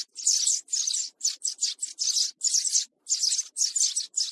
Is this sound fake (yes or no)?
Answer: no